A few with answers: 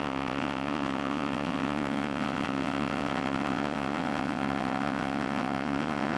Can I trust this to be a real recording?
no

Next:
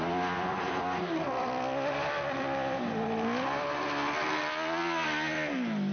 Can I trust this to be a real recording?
yes